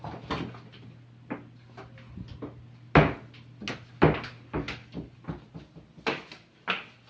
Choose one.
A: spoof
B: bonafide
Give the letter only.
B